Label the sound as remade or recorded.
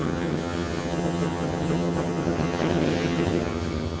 remade